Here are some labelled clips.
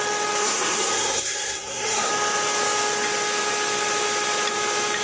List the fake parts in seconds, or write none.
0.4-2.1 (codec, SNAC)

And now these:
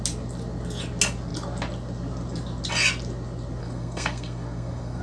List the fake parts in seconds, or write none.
3.6-5.0 (codec, SNAC)